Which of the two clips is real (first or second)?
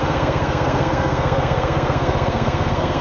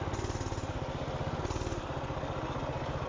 second